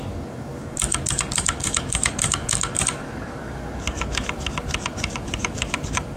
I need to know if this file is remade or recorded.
remade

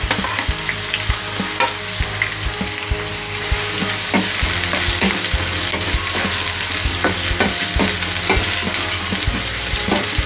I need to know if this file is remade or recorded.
recorded